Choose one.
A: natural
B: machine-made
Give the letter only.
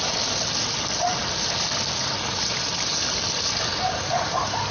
A